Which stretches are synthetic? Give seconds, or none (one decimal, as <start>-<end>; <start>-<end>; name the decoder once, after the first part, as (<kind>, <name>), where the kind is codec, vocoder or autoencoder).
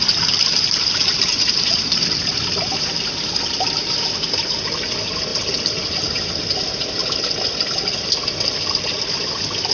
0.0-4.6 (vocoder, BigVGAN v2); 5.3-6.4